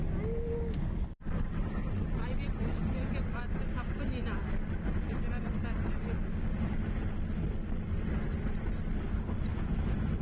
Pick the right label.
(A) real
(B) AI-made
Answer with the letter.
A